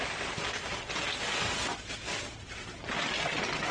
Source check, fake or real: real